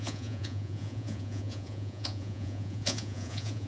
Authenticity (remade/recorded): remade